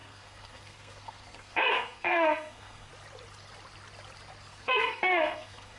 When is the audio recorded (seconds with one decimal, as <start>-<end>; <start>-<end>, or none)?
2.9-4.5